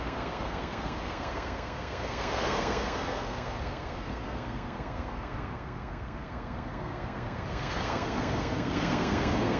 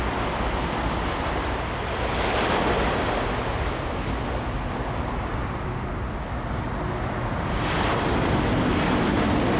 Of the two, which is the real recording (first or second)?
second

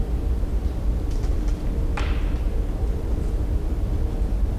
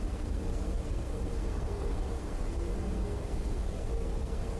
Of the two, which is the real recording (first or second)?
first